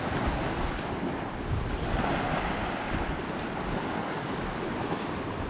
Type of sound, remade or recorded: recorded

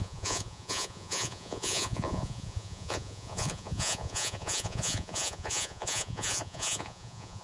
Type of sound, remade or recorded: remade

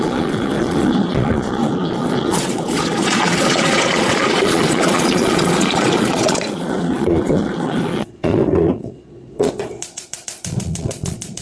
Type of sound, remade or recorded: remade